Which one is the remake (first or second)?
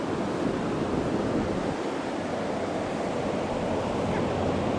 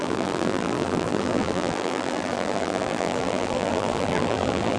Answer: second